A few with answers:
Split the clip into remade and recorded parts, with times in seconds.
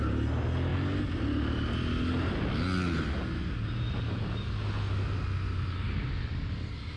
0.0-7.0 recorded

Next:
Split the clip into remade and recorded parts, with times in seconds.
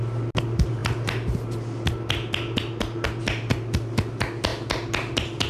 0.0-5.5 recorded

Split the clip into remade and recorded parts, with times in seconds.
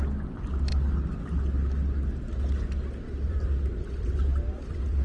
0.0-5.0 recorded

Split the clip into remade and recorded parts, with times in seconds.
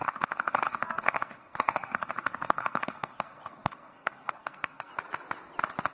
0.0-4.9 remade; 4.9-5.9 recorded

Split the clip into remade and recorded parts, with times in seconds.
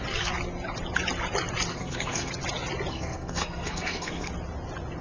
0.0-1.7 recorded; 1.7-2.3 remade; 2.3-2.9 recorded; 2.9-4.3 remade; 4.3-5.0 recorded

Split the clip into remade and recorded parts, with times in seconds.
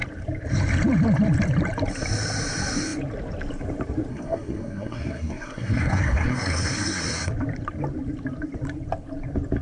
0.0-4.1 recorded; 4.1-7.3 remade; 7.3-9.6 recorded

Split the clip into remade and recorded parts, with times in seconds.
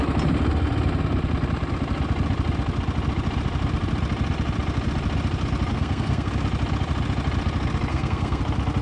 0.0-5.7 recorded; 5.7-6.3 remade; 6.3-7.9 recorded; 7.9-8.4 remade; 8.4-8.8 recorded